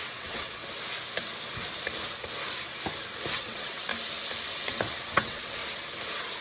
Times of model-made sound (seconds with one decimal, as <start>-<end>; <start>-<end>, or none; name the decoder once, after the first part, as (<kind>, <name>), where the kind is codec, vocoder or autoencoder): 0.0-0.6 (vocoder, WaveNeXt); 3.3-3.9; 4.5-5.6